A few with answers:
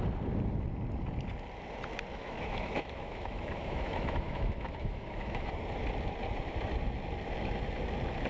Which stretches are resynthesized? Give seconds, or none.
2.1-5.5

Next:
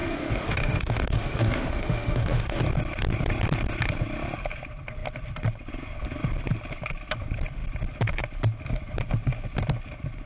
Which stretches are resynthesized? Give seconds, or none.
0.0-2.6

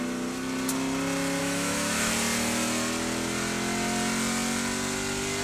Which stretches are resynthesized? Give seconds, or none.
1.4-2.1

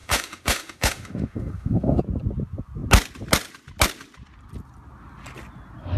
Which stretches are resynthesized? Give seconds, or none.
0.0-2.0

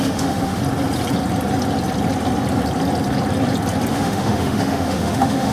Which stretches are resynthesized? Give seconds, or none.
0.0-0.6; 3.9-5.5